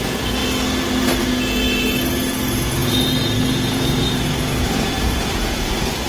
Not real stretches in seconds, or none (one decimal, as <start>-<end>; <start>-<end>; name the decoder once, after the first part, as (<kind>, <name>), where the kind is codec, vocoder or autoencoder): 0.0-0.4 (vocoder, Vocos); 1.2-6.1